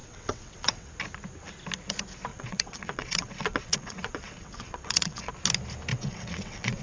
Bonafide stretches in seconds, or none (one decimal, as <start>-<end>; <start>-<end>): 0.9-2.3; 5.3-5.9